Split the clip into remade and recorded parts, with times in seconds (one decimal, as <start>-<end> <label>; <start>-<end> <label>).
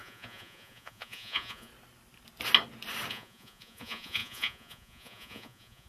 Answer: 0.0-1.7 remade; 1.7-3.1 recorded; 3.1-5.9 remade